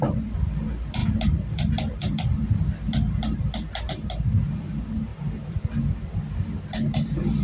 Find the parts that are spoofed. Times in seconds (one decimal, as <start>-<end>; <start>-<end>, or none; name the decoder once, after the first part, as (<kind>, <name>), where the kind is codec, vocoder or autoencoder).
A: none